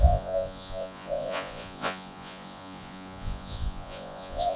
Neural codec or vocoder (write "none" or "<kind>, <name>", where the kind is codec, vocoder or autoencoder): vocoder, Vocos